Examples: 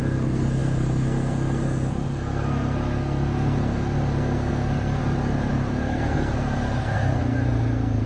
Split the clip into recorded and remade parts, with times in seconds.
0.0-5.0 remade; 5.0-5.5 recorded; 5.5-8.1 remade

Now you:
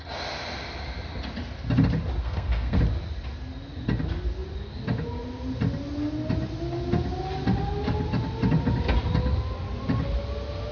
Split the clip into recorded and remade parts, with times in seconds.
0.0-2.2 recorded; 2.2-2.8 remade; 2.8-10.7 recorded

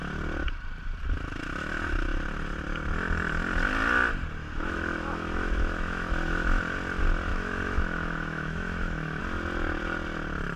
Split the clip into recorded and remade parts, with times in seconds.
0.0-4.4 recorded; 4.4-6.6 remade; 6.6-7.3 recorded; 7.3-9.2 remade; 9.2-10.6 recorded